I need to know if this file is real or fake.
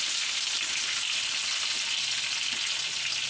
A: real